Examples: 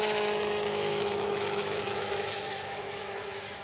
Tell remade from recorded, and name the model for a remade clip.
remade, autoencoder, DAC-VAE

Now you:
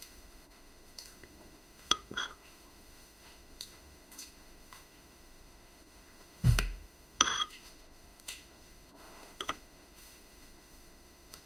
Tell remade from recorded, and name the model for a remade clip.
remade, autoencoder, DAC-VAE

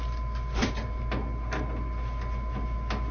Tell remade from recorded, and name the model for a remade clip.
recorded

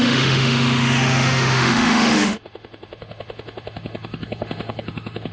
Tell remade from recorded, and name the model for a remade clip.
remade, autoencoder, DAC-VAE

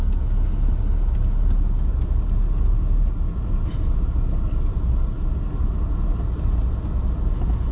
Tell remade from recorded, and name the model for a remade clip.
recorded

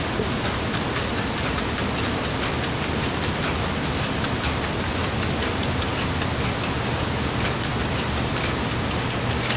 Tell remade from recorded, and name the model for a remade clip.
recorded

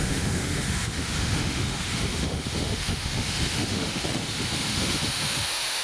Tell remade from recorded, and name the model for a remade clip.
remade, autoencoder, DAC-VAE